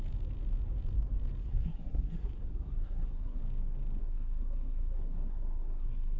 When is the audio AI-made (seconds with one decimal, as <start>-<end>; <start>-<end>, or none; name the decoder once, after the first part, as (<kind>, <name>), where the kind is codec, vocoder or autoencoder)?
1.4-3.4 (codec, SNAC); 4.0-6.2